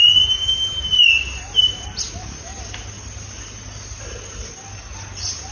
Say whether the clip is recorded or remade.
recorded